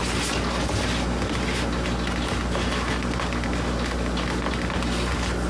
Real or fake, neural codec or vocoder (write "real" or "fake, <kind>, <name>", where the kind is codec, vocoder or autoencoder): real